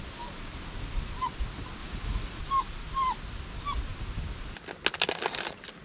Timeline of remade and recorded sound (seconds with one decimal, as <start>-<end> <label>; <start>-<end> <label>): 0.0-1.8 recorded; 1.8-2.4 remade; 2.4-5.8 recorded